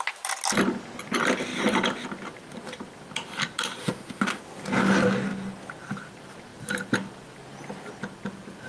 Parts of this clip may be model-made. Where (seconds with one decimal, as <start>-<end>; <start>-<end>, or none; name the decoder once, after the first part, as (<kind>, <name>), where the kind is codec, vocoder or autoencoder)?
3.8-4.4 (autoencoder, DAC-VAE)